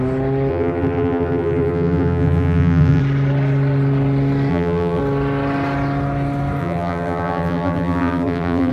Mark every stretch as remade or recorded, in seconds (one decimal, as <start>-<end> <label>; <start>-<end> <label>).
0.0-0.5 recorded; 0.5-3.0 remade; 3.0-4.5 recorded; 4.5-5.0 remade; 5.0-6.6 recorded; 6.6-8.7 remade